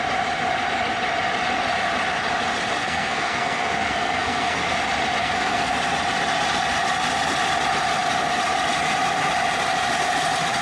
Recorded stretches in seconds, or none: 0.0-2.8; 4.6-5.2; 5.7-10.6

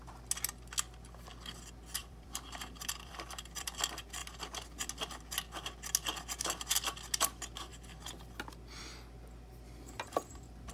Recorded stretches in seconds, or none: 0.0-2.0; 3.8-10.7